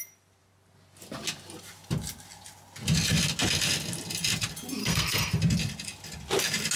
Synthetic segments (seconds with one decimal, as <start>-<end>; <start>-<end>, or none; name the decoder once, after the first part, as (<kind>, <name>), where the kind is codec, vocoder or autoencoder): 4.8-5.4 (codec, SNAC)